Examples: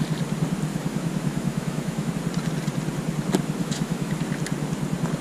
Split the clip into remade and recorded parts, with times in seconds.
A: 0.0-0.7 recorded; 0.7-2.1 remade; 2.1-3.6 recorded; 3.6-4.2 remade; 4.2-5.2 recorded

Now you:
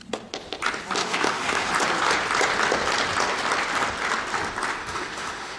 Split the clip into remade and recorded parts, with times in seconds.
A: 0.0-1.0 recorded; 1.0-1.7 remade; 1.7-4.8 recorded; 4.8-5.6 remade

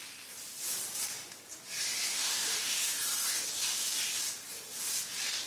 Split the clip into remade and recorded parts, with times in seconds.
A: 0.0-2.1 recorded; 2.1-2.9 remade; 2.9-5.5 recorded

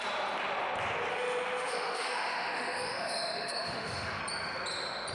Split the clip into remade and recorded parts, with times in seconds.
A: 0.0-1.1 recorded; 1.1-4.2 remade; 4.2-5.1 recorded

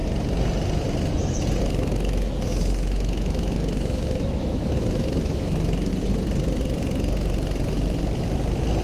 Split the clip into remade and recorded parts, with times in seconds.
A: 0.0-1.6 recorded; 1.6-5.9 remade; 5.9-8.8 recorded